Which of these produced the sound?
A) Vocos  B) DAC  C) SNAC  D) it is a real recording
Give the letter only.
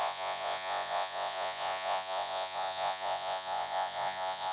A